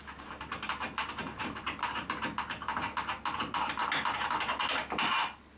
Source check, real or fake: real